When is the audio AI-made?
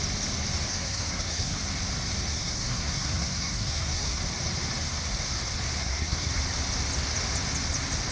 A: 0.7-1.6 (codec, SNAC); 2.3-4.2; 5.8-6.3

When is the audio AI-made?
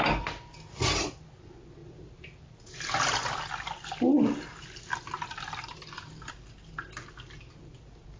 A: none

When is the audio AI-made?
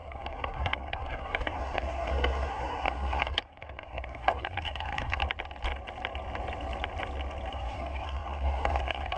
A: 0.0-5.2 (codec, SNAC); 7.5-9.2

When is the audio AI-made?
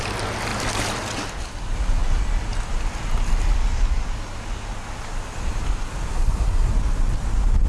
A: 6.1-6.7 (codec, SNAC)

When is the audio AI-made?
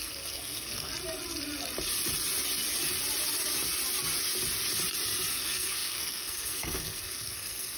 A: 0.0-0.9 (codec, SNAC); 5.3-7.8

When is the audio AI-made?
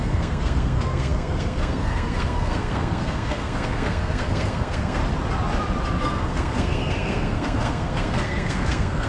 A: 0.0-5.0 (codec, SNAC); 6.0-9.1